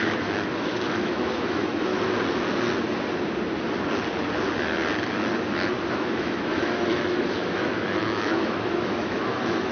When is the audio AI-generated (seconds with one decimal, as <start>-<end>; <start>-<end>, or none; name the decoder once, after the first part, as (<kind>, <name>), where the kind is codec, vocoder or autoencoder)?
0.0-1.9 (autoencoder, DAC-VAE); 5.9-9.7